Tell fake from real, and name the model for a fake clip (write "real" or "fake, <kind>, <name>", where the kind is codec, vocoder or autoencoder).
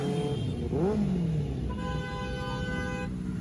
real